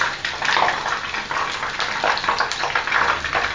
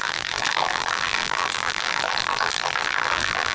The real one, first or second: first